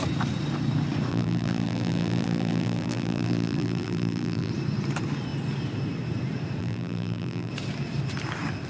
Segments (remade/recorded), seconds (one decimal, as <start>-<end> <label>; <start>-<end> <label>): 0.0-1.1 recorded; 1.1-4.5 remade; 4.5-6.6 recorded; 6.6-7.5 remade; 7.5-8.7 recorded